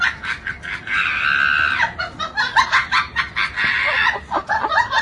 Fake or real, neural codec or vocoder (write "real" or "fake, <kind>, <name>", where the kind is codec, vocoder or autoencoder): real